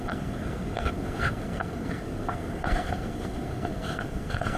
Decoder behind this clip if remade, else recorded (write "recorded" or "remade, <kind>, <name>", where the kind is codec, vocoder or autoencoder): remade, codec, SNAC